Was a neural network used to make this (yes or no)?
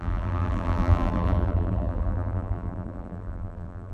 yes